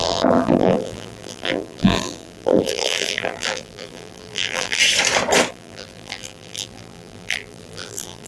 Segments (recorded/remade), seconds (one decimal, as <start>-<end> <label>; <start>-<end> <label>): 0.0-4.8 remade; 4.8-5.5 recorded; 5.5-8.3 remade